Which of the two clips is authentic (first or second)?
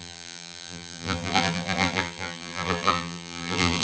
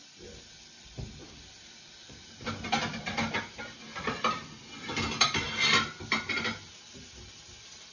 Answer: second